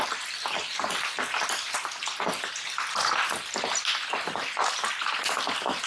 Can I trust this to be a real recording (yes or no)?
yes